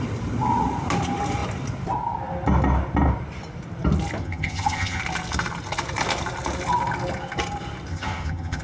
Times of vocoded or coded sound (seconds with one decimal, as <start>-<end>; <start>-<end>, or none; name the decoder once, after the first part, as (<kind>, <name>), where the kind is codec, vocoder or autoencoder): 4.2-5.0 (vocoder, HiFi-GAN); 7.9-8.6